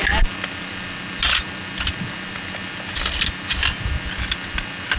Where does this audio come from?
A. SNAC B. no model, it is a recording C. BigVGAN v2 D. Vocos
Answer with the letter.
B